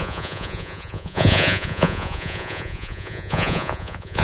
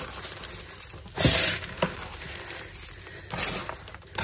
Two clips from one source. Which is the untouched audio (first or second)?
second